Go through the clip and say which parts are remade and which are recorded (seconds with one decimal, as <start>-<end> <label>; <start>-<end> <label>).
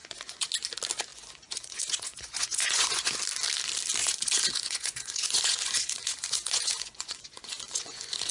0.0-0.5 remade; 0.5-1.1 recorded; 1.1-3.1 remade; 3.1-4.0 recorded; 4.0-8.3 remade